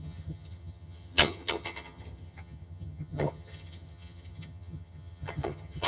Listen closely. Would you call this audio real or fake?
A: fake